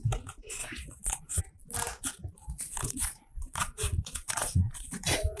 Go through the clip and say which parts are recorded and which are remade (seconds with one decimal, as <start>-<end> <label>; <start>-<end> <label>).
0.0-0.6 recorded; 0.6-1.4 remade; 1.4-2.4 recorded; 2.4-5.4 remade

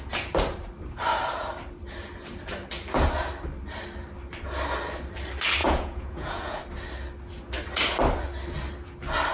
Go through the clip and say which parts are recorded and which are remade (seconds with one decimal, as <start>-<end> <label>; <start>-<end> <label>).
0.0-5.6 recorded; 5.6-6.6 remade; 6.6-9.3 recorded

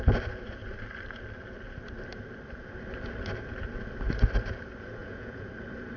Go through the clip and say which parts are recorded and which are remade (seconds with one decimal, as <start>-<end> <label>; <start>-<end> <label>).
0.0-5.0 recorded; 5.0-5.5 remade; 5.5-6.0 recorded

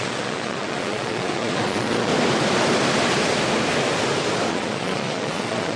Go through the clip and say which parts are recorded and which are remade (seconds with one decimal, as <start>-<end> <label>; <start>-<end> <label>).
0.0-2.1 remade; 2.1-4.5 recorded; 4.5-5.8 remade